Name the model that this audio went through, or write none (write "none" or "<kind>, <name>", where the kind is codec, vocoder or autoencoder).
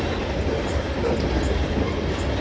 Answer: none